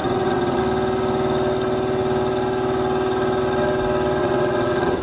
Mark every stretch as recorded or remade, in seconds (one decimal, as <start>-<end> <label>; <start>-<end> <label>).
0.0-0.6 remade; 0.6-4.2 recorded; 4.2-5.0 remade